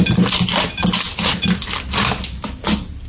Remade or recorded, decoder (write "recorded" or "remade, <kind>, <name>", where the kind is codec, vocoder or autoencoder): recorded